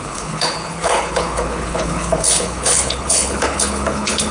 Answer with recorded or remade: remade